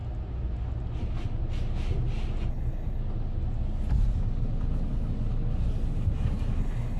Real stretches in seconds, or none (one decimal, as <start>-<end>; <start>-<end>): 0.0-2.5; 3.0-6.6